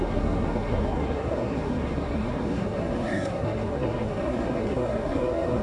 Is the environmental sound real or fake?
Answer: fake